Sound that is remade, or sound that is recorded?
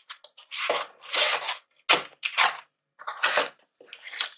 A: recorded